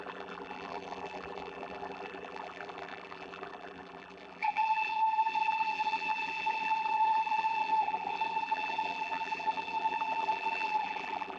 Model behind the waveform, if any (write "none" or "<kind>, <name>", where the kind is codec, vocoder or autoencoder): vocoder, BigVGAN v2